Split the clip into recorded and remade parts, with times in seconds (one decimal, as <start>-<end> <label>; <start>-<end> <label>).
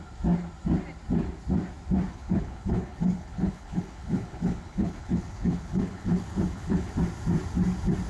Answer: 0.0-2.1 recorded; 2.1-6.9 remade; 6.9-8.1 recorded